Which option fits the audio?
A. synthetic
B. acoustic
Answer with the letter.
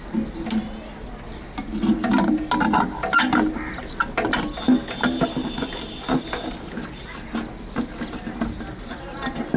B